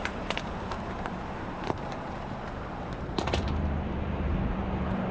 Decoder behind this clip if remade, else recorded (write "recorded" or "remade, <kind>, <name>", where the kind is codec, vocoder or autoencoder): remade, vocoder, BigVGAN v2